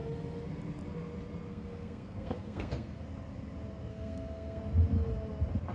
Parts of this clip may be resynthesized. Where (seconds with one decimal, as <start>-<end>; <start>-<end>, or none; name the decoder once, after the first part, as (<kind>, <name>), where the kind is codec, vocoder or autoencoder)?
1.5-3.0 (codec, SNAC); 3.9-4.6